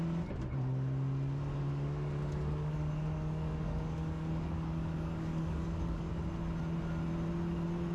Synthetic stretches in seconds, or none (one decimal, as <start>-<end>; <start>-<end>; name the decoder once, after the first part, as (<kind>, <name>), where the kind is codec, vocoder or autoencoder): 1.5-6.2 (codec, DAC)